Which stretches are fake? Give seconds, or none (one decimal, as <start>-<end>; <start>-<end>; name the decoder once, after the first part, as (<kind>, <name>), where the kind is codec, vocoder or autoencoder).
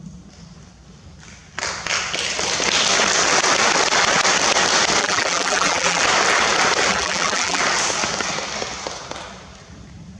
5.0-6.0 (vocoder, BigVGAN v2); 6.9-7.6